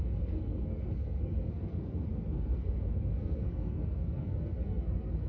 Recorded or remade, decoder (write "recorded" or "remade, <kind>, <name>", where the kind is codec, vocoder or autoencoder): remade, codec, SNAC